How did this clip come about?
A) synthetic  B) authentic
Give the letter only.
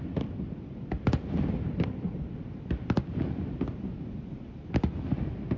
B